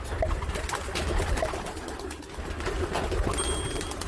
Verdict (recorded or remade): recorded